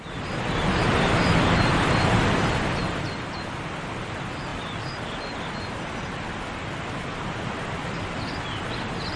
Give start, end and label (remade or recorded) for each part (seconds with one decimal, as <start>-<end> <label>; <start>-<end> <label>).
0.0-9.2 recorded